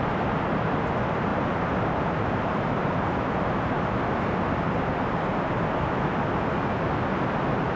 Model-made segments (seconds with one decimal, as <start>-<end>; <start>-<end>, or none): 1.3-3.8